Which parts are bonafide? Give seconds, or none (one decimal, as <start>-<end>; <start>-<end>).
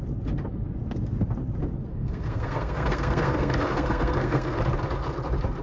0.0-1.9; 4.6-5.6